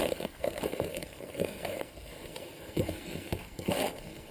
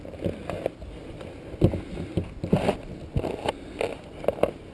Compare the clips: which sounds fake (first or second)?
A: first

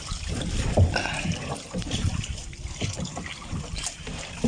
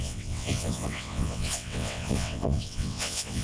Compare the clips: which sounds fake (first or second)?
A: second